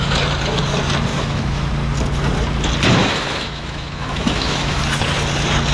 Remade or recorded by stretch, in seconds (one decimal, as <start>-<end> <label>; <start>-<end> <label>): 0.0-1.1 recorded; 1.1-1.7 remade; 1.7-3.0 recorded; 3.0-4.8 remade; 4.8-5.7 recorded